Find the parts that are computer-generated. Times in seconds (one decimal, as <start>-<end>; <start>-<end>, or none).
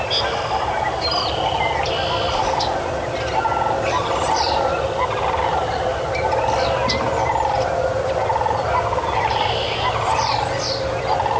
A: none